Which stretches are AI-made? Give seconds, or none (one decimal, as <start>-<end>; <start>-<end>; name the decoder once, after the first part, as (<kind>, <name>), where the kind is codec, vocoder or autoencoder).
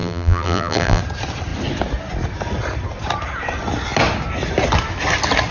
0.0-1.0 (vocoder, BigVGAN v2)